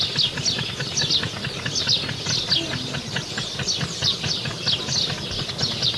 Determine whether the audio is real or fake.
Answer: real